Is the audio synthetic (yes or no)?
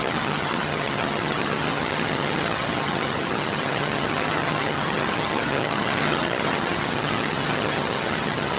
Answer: yes